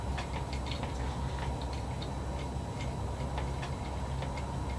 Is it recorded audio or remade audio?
recorded